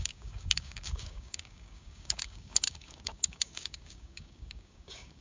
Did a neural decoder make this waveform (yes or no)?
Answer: yes